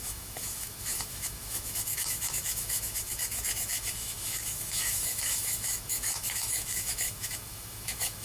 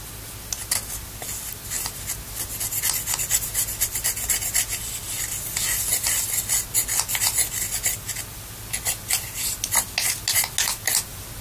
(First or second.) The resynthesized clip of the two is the first